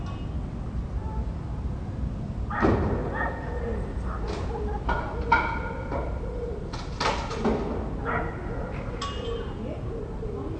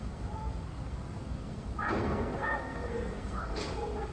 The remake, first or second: second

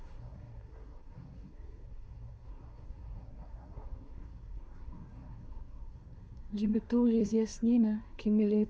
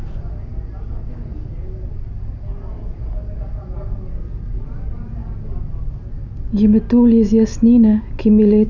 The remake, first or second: first